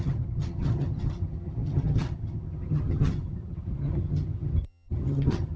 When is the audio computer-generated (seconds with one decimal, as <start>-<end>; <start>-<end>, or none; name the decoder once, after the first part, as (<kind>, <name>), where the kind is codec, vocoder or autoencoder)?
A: 0.0-5.6 (vocoder, HiFi-GAN)